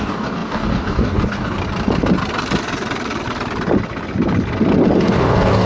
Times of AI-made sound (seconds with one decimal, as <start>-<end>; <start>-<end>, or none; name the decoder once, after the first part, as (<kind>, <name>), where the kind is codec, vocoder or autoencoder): 0.0-1.6 (codec, DAC); 5.0-5.7